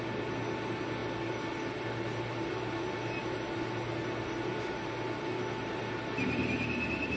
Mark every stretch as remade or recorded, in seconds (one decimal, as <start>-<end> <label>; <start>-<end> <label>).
0.0-7.2 recorded